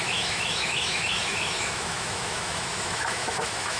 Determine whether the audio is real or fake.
fake